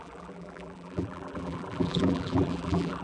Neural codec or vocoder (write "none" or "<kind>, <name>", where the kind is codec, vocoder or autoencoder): vocoder, BigVGAN v2